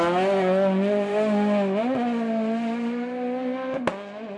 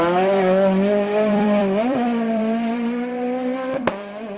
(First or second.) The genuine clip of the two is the first